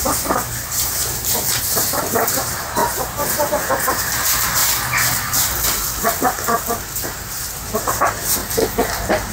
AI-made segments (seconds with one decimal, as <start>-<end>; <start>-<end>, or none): 0.0-4.6; 7.0-8.4